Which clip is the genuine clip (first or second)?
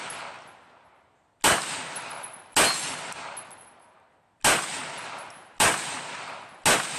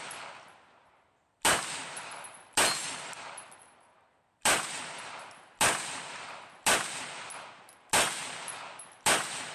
first